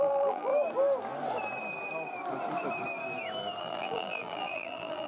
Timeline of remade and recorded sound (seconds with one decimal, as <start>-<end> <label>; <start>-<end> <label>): 0.0-0.5 remade; 0.5-3.6 recorded; 3.6-5.1 remade